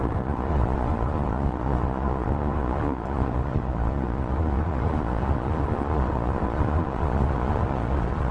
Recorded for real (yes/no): no